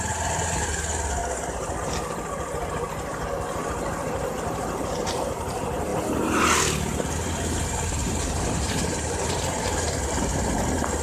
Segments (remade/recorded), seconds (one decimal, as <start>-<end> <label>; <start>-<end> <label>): 0.0-8.0 recorded; 8.0-10.5 remade; 10.5-11.0 recorded

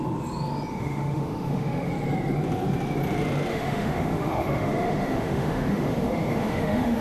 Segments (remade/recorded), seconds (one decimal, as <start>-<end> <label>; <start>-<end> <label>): 0.0-0.7 recorded; 0.7-1.9 remade; 1.9-3.5 recorded; 3.5-7.0 remade

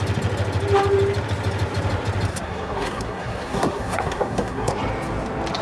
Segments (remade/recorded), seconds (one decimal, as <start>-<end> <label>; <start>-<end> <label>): 0.0-2.3 recorded; 2.3-4.8 remade; 4.8-5.6 recorded

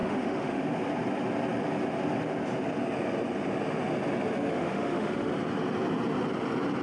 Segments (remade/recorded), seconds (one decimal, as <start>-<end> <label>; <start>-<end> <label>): 0.0-0.6 remade; 0.6-4.5 recorded; 4.5-5.3 remade; 5.3-6.8 recorded

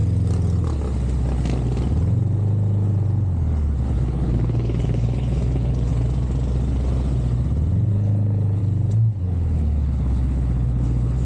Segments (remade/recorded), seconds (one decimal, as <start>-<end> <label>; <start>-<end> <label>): 0.0-3.9 recorded; 3.9-5.9 remade; 5.9-7.9 recorded; 7.9-8.6 remade; 8.6-9.2 recorded; 9.2-11.2 remade

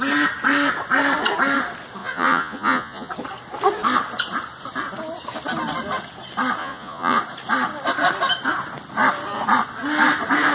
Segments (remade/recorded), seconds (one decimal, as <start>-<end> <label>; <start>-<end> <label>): 0.0-2.0 recorded; 2.0-3.1 remade; 3.1-6.6 recorded; 6.6-7.2 remade; 7.2-10.5 recorded

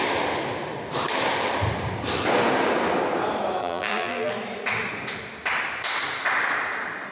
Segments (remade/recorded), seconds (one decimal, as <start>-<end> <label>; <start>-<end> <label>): 0.0-3.6 recorded; 3.6-4.3 remade; 4.3-7.1 recorded

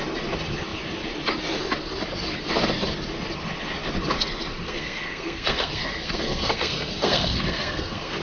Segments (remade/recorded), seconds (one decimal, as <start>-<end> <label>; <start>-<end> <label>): 0.0-4.5 recorded; 4.5-8.2 remade